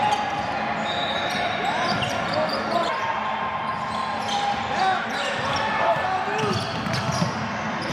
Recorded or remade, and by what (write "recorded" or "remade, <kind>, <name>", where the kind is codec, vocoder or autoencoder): recorded